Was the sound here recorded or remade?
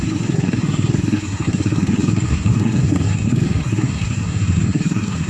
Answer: remade